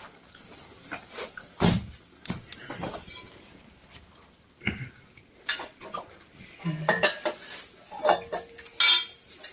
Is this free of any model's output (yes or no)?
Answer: yes